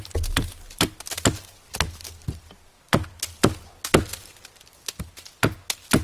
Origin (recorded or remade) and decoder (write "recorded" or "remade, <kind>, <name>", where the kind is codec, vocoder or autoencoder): recorded